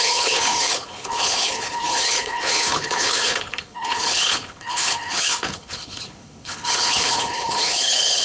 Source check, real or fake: fake